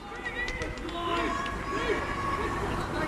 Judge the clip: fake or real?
real